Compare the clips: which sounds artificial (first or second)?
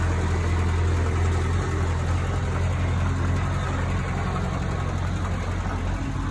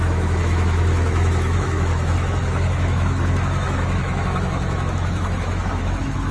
second